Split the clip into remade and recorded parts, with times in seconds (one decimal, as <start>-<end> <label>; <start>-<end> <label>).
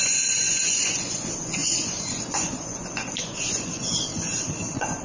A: 0.0-5.0 remade